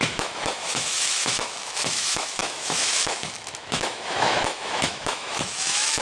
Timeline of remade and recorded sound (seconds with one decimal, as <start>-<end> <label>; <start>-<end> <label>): 0.0-6.0 remade